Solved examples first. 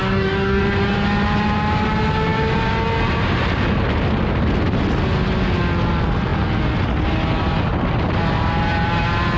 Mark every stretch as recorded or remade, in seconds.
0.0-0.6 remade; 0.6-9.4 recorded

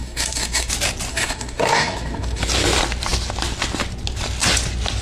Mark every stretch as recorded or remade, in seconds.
0.0-0.7 remade; 0.7-1.1 recorded; 1.1-2.4 remade; 2.4-5.0 recorded

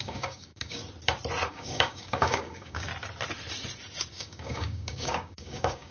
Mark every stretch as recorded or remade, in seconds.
0.0-0.8 remade; 0.8-1.5 recorded; 1.5-2.9 remade; 2.9-4.1 recorded; 4.1-5.9 remade

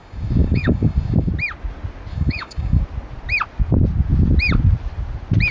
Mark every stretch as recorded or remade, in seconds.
0.0-1.3 remade; 1.3-2.1 recorded; 2.1-2.8 remade; 2.8-5.5 recorded

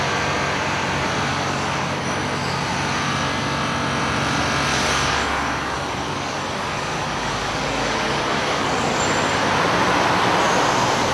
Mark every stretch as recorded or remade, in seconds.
0.0-1.3 recorded; 1.3-2.0 remade; 2.0-4.7 recorded; 4.7-9.0 remade; 9.0-11.1 recorded

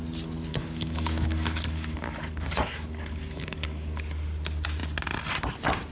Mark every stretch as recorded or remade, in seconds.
0.0-0.5 recorded; 0.5-4.0 remade; 4.0-5.9 recorded